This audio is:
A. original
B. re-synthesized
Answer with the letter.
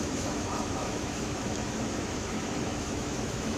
B